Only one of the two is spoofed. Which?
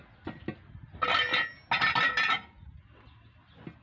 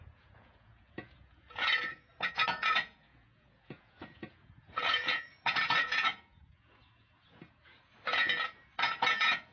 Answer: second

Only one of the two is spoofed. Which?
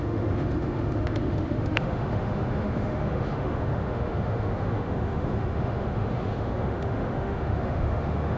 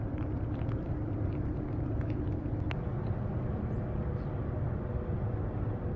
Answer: first